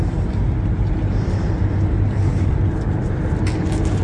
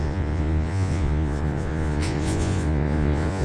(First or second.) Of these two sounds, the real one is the first